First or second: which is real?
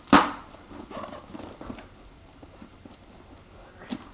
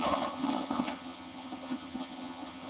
first